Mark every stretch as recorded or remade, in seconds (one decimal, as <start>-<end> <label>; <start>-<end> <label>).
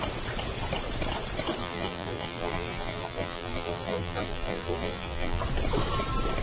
0.0-1.6 recorded; 1.6-5.4 remade; 5.4-6.4 recorded